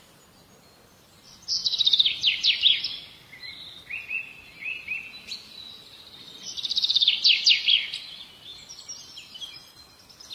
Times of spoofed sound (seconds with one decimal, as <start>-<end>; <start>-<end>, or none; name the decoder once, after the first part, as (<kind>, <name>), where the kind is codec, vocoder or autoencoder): 1.6-2.8 (vocoder, BigVGAN v2)